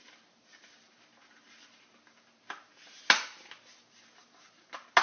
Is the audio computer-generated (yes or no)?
no